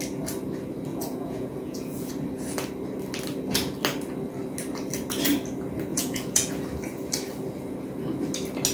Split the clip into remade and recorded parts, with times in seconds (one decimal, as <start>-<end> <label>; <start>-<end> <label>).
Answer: 0.0-0.9 recorded; 0.9-2.1 remade; 2.1-5.9 recorded; 5.9-6.5 remade; 6.5-8.7 recorded